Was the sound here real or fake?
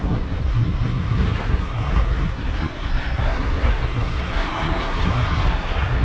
fake